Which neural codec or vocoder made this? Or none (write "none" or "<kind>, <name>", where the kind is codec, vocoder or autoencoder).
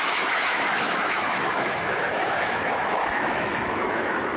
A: autoencoder, DAC-VAE